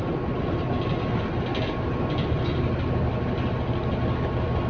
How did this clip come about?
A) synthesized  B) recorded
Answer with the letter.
B